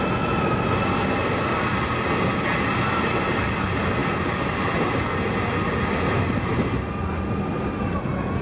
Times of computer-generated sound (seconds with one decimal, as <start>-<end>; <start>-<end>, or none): 4.0-4.8